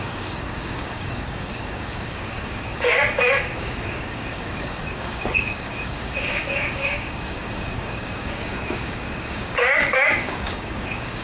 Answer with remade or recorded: remade